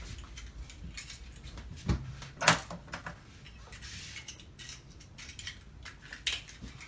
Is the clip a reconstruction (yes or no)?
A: no